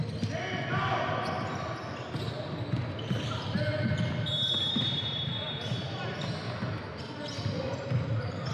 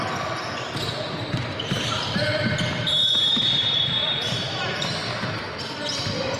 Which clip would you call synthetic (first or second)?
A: second